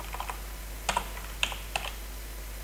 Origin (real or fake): real